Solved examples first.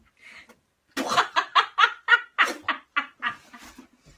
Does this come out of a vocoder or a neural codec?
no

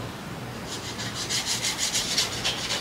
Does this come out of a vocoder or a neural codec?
no